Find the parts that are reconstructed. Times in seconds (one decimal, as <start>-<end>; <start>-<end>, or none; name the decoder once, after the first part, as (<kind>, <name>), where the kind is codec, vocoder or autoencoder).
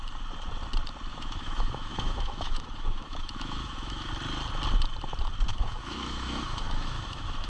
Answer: 1.1-4.1 (autoencoder, DAC-VAE); 5.5-7.5